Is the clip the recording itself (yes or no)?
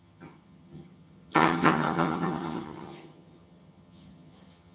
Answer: no